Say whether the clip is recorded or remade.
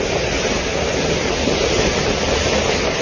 recorded